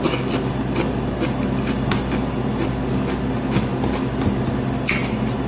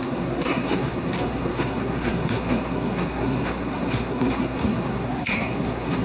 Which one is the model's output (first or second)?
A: second